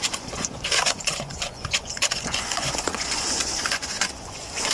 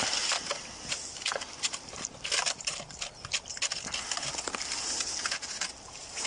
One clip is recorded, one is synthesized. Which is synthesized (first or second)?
first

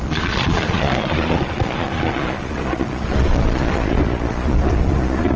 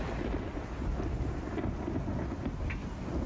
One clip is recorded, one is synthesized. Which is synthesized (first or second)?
first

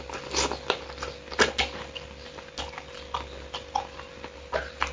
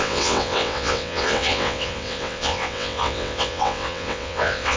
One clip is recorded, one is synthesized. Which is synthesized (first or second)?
second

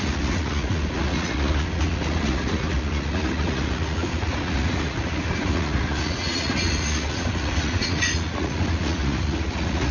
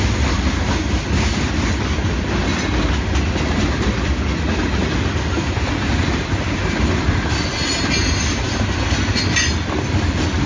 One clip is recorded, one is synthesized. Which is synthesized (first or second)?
first